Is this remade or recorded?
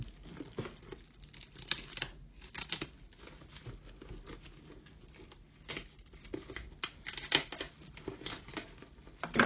recorded